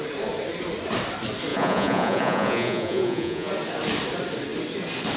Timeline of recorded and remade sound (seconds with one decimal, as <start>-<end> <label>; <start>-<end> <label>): 0.0-1.5 recorded; 1.5-3.5 remade; 3.5-5.2 recorded